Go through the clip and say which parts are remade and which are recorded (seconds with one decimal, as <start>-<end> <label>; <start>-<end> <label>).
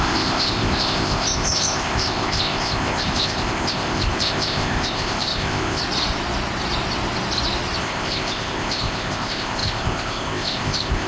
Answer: 0.0-5.8 remade; 5.8-7.8 recorded; 7.8-11.1 remade